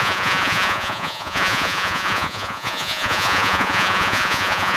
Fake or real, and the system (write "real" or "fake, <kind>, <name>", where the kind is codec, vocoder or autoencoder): fake, vocoder, Vocos